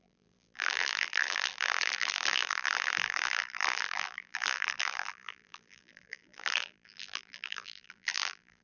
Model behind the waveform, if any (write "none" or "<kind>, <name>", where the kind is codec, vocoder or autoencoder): vocoder, BigVGAN v2